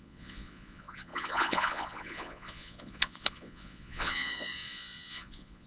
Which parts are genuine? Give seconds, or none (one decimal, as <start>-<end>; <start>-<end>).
none